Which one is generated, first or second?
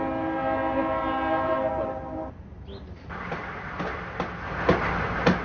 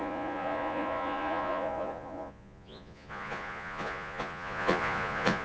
second